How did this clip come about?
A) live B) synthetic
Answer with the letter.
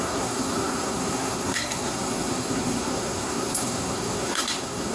B